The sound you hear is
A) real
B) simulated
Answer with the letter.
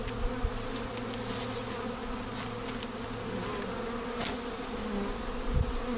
A